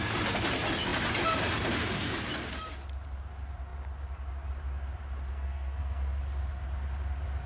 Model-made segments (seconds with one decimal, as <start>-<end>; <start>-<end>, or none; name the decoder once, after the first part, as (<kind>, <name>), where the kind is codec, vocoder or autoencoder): 5.3-6.2 (codec, SNAC)